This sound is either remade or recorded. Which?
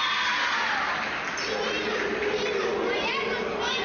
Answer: recorded